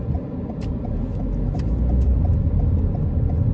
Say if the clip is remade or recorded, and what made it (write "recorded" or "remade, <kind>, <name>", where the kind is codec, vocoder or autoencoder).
recorded